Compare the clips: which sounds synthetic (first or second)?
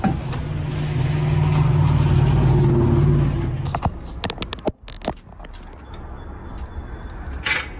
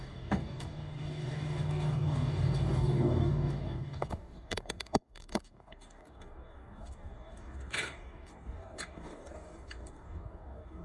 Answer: second